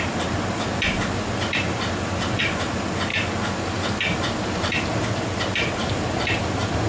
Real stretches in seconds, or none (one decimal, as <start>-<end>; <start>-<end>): 3.1-5.2